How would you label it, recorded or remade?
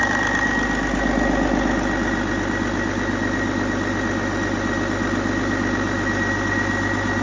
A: recorded